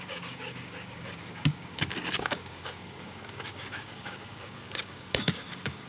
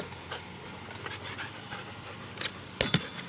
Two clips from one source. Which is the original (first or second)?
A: second